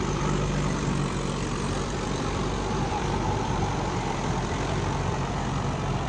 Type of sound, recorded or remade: remade